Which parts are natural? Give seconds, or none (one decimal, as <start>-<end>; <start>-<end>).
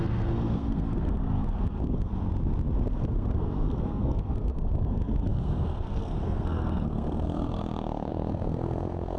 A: 2.1-2.9